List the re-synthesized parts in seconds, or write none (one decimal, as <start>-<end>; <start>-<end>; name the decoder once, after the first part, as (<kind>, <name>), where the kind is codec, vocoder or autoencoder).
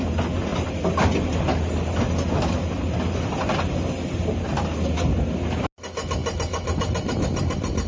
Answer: 0.5-1.1 (vocoder, BigVGAN v2)